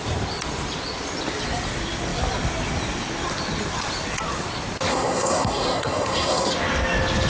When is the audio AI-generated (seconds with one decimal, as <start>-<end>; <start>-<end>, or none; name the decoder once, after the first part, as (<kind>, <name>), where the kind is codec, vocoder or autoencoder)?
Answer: 4.9-6.5 (codec, SNAC)